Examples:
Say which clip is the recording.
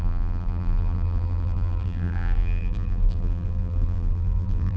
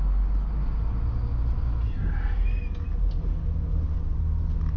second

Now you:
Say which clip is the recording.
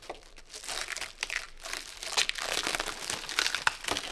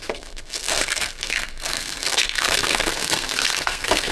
first